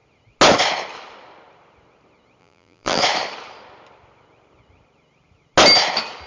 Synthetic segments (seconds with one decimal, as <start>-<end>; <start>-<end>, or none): 2.4-3.0